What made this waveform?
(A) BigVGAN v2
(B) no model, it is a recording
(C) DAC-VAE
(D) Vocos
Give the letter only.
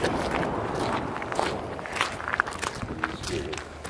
B